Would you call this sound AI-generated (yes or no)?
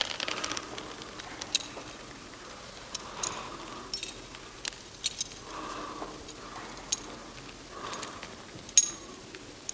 no